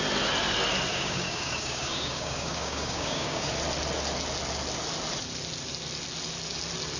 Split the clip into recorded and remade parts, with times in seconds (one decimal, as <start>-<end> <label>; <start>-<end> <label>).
0.0-0.9 recorded; 0.9-3.5 remade; 3.5-7.0 recorded